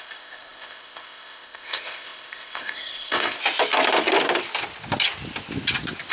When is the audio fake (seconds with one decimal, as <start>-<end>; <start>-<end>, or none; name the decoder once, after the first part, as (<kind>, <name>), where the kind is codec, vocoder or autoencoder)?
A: 0.0-3.4 (codec, ZipCodec)